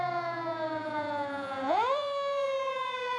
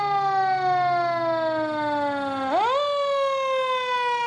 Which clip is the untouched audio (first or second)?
second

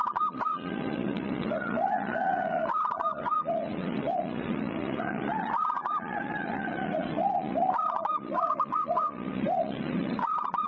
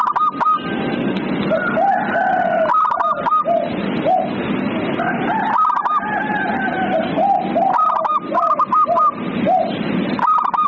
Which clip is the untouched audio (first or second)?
second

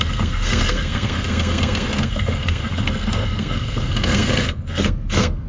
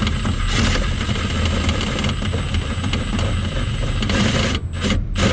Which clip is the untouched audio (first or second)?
second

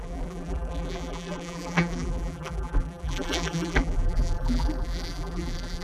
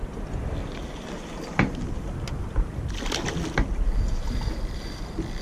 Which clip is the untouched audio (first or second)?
second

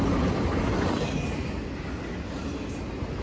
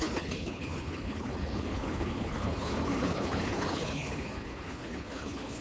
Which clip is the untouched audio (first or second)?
first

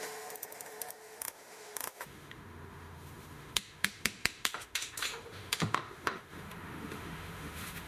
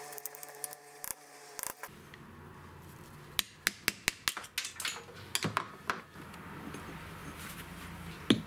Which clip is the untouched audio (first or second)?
second